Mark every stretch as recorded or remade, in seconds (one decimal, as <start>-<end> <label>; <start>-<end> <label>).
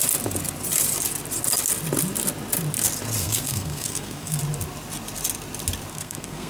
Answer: 0.0-3.2 recorded; 3.2-4.4 remade; 4.4-5.9 recorded; 5.9-6.5 remade